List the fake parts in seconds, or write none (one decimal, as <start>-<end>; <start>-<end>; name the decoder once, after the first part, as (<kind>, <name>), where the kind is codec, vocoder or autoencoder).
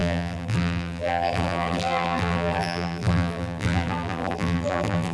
0.0-5.1 (vocoder, BigVGAN v2)